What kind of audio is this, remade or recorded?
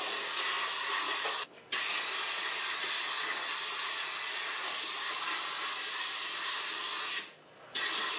recorded